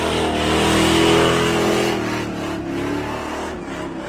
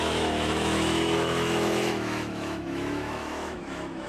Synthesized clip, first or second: second